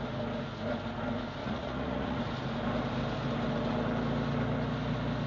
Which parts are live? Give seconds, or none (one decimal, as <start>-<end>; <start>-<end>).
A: 0.0-1.4; 2.2-5.3